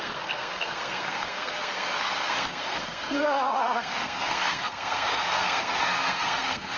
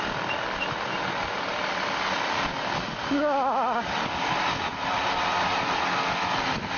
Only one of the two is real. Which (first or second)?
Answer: second